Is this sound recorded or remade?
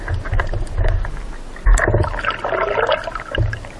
recorded